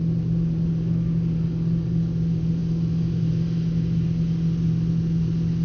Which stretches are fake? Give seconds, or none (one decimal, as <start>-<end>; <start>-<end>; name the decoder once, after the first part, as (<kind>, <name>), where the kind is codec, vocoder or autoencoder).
none